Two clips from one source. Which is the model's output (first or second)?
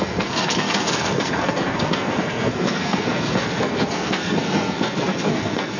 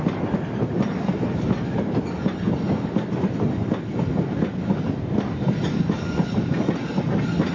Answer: first